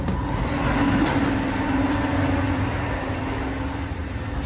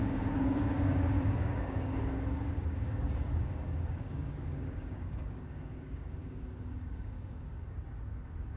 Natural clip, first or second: first